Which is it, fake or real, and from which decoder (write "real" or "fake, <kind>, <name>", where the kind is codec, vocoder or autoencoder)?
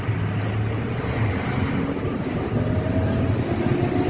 real